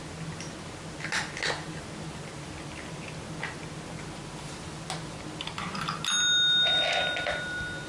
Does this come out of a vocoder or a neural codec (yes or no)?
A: no